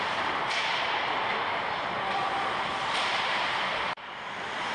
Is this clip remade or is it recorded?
remade